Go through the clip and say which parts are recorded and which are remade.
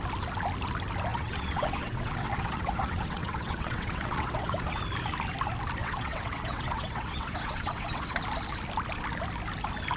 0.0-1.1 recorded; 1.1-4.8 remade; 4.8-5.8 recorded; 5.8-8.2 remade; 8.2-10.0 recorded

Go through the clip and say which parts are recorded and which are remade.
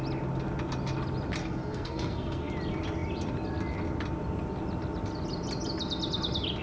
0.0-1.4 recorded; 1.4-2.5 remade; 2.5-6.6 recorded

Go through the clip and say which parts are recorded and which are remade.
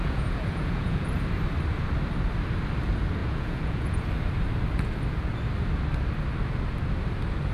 0.0-1.2 remade; 1.2-3.2 recorded; 3.2-4.0 remade; 4.0-7.5 recorded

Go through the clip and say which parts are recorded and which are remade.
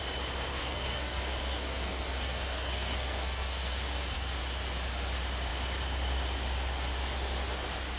0.0-0.5 recorded; 0.5-4.4 remade; 4.4-8.0 recorded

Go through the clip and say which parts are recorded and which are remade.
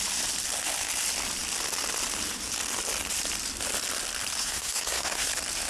0.0-4.4 recorded; 4.4-5.3 remade; 5.3-5.7 recorded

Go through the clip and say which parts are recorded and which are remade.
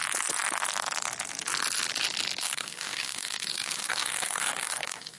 0.0-2.4 recorded; 2.4-5.2 remade